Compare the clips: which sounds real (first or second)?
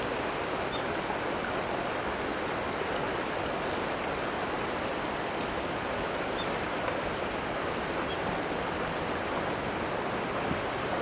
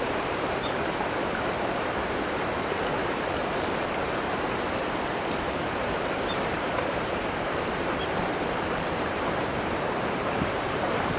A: first